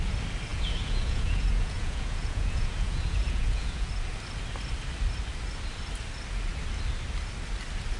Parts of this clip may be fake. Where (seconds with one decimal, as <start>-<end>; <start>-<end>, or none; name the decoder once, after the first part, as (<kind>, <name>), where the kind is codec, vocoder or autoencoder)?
0.5-3.9 (vocoder, Vocos)